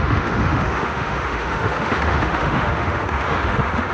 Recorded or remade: remade